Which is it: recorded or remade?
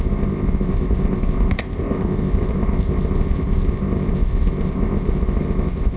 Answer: remade